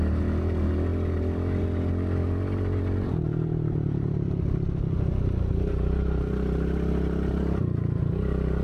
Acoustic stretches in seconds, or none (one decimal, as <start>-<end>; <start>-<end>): 0.0-8.6